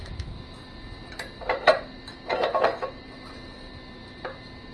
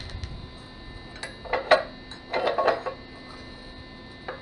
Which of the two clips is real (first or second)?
second